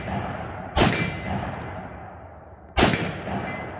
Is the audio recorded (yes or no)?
yes